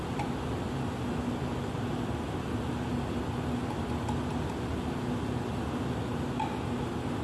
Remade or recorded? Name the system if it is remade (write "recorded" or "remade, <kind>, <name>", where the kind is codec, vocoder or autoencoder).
recorded